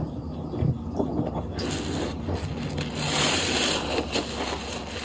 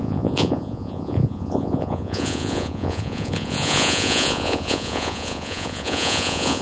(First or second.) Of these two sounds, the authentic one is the first